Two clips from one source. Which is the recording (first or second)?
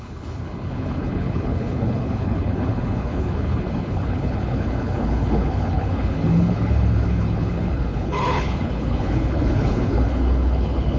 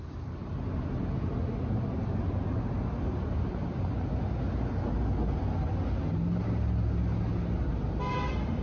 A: second